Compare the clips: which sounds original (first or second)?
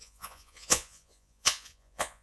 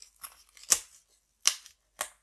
second